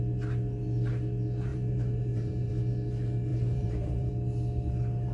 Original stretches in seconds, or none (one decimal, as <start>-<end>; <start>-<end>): 0.0-1.5; 2.5-3.3; 4.1-5.1